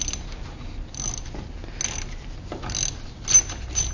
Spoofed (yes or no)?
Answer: no